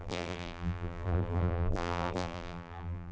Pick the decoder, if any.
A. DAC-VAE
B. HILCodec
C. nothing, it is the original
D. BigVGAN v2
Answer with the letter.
D